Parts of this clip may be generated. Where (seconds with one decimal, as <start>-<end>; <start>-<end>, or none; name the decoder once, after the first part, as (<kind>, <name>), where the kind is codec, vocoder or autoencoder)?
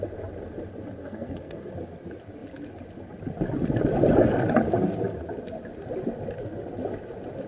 1.0-1.7 (codec, SNAC)